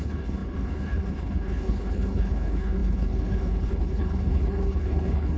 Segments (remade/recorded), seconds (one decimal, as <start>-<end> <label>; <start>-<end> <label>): 0.0-5.4 remade